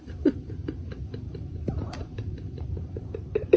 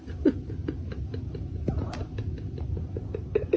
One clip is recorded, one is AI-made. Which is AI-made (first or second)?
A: first